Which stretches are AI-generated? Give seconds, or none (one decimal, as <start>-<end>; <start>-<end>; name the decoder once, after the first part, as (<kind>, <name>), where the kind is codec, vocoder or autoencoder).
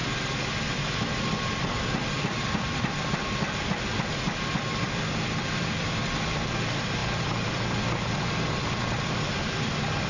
0.0-10.1 (vocoder, BigVGAN v2)